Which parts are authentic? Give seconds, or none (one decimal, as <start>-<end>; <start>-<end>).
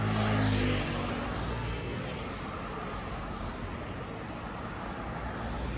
0.0-1.5; 2.0-5.8